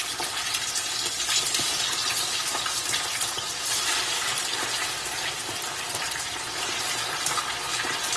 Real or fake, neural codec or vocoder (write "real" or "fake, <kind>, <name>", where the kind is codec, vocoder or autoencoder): real